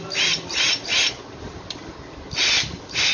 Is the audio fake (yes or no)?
no